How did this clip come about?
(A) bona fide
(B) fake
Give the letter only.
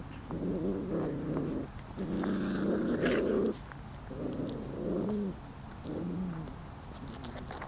A